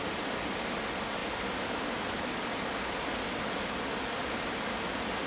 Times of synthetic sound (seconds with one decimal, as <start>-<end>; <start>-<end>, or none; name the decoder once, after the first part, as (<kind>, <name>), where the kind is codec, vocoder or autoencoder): none